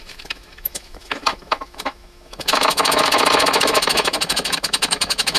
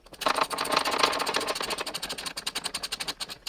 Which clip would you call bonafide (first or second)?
second